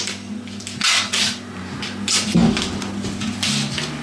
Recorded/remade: recorded